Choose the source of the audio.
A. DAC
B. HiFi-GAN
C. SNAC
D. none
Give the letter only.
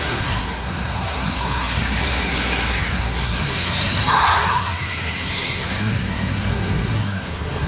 C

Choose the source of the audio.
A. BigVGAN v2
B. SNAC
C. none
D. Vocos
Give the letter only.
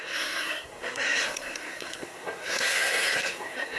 B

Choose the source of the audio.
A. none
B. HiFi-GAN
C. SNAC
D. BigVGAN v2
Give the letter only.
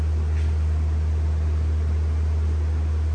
A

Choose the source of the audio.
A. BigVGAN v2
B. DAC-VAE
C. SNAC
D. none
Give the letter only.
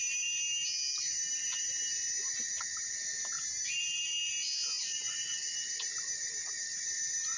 D